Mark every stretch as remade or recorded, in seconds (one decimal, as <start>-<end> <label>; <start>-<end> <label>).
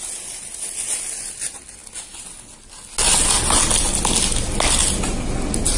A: 0.0-5.8 recorded